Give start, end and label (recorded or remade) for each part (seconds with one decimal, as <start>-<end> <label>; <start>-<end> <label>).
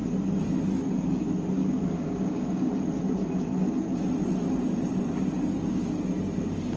0.0-1.6 recorded; 1.6-2.7 remade; 2.7-6.8 recorded